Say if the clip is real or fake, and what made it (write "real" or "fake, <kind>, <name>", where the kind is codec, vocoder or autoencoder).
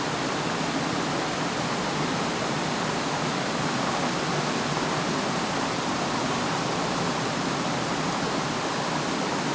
real